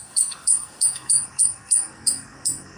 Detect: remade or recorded remade